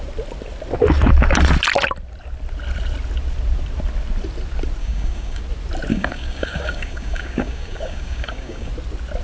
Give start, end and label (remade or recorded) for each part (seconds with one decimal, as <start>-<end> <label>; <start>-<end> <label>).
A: 0.0-4.8 recorded; 4.8-5.4 remade; 5.4-5.9 recorded; 5.9-8.7 remade; 8.7-9.2 recorded